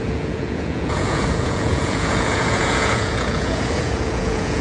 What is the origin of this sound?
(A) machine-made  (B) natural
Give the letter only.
A